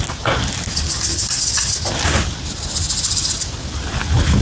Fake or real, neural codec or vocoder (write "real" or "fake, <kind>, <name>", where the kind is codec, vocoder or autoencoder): real